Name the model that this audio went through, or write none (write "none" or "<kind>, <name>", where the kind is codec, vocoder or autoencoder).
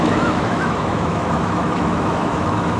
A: autoencoder, DAC-VAE